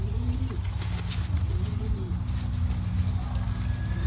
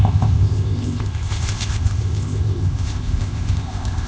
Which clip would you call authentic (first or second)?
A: first